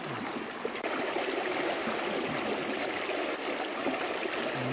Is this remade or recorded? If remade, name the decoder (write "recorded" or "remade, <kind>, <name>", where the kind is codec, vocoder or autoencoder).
recorded